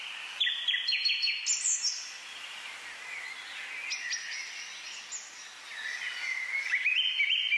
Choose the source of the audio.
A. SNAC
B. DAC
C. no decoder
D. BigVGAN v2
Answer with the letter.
C